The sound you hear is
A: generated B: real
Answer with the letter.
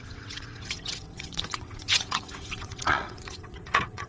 A